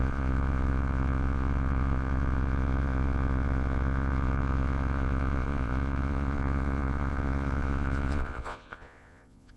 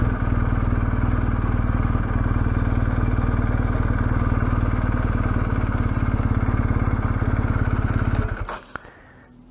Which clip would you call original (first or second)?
second